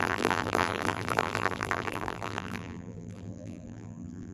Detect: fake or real fake